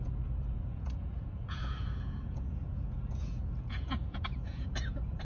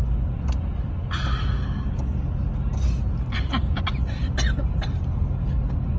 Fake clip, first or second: first